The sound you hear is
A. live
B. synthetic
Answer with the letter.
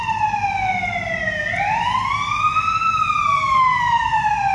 A